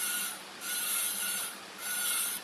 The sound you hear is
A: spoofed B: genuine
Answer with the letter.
A